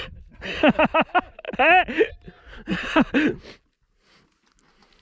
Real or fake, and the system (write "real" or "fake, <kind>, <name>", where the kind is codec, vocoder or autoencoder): real